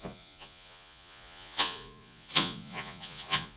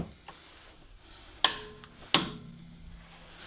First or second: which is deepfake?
first